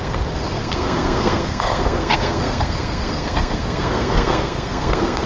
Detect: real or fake fake